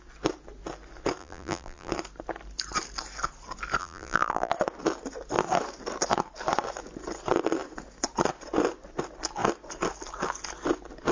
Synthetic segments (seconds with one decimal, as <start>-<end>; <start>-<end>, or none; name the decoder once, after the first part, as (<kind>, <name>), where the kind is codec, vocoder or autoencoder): 1.2-1.9 (vocoder, BigVGAN v2); 3.8-4.5